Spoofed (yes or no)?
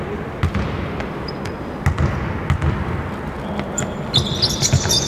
no